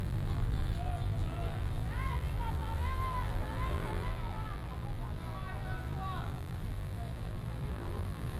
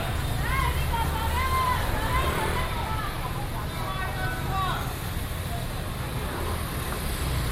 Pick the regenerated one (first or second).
first